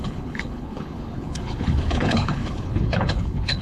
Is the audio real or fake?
fake